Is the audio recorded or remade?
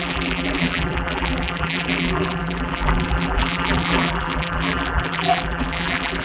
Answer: remade